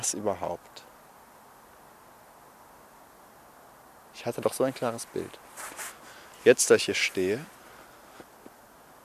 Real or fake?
real